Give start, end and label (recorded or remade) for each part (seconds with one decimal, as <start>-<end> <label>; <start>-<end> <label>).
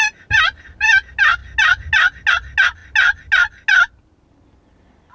0.0-5.1 recorded